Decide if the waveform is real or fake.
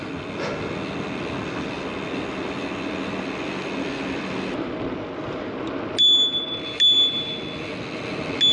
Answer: real